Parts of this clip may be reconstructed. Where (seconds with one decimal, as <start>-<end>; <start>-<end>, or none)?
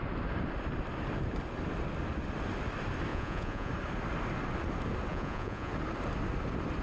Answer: 3.1-3.7; 5.1-5.7